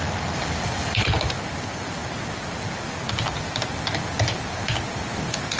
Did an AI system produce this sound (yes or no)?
no